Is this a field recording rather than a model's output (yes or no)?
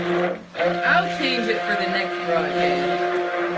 yes